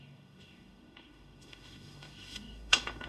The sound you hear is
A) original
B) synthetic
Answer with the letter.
B